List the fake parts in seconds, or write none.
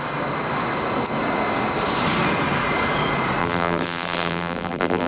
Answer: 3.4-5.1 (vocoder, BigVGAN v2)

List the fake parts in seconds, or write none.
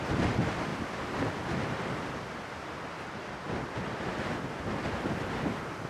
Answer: none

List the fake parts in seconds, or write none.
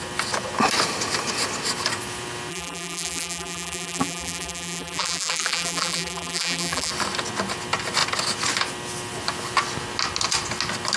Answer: 2.5-6.9 (vocoder, BigVGAN v2)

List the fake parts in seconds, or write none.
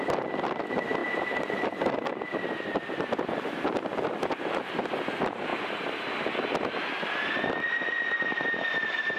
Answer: 1.0-1.7 (vocoder, BigVGAN v2)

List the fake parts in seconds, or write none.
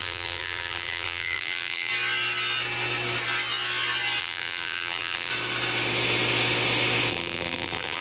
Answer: 0.0-1.9 (vocoder, BigVGAN v2); 4.2-5.3; 7.1-8.0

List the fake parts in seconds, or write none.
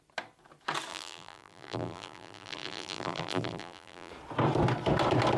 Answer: 0.9-4.1 (vocoder, BigVGAN v2)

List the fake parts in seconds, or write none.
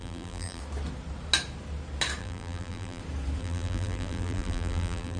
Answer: 0.0-0.6 (vocoder, BigVGAN v2); 2.2-3.0; 3.4-5.2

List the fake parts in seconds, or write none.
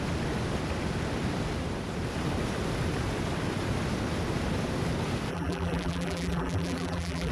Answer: 5.3-7.3 (vocoder, BigVGAN v2)